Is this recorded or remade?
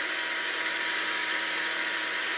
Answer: remade